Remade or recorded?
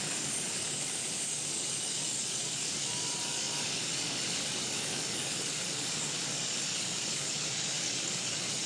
remade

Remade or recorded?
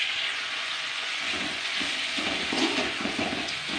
remade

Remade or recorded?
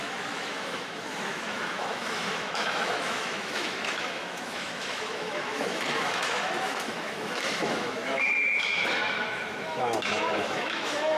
remade